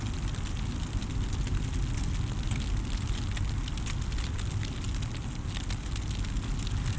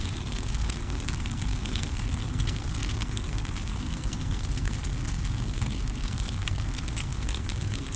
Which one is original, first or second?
first